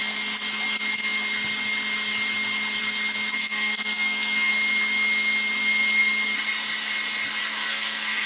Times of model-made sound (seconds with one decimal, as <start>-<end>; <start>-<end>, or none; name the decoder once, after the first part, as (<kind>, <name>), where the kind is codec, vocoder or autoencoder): 3.4-4.5 (codec, SNAC); 7.4-8.3